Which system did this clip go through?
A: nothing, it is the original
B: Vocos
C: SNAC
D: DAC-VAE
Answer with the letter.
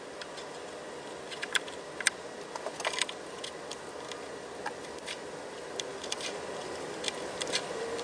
A